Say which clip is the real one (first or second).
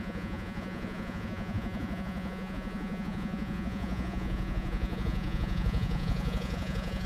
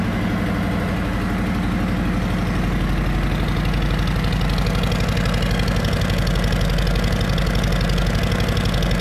second